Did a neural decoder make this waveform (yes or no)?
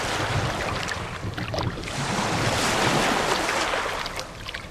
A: no